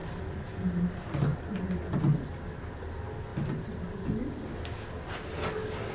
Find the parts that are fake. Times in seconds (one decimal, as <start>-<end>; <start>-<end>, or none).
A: none